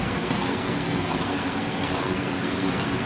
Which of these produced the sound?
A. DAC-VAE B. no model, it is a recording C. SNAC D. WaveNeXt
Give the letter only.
C